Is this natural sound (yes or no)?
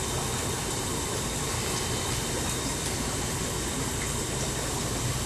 no